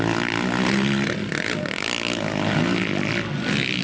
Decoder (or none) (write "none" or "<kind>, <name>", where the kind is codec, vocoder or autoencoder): none